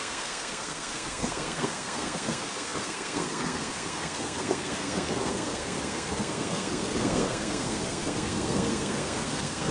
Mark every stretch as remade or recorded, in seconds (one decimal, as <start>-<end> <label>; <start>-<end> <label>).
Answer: 0.0-9.7 remade